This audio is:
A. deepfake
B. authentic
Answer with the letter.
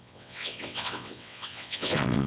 A